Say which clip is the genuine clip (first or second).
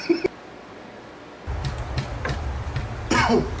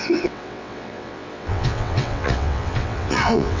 first